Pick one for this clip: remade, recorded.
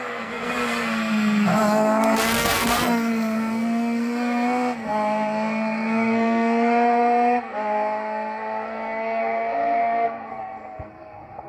remade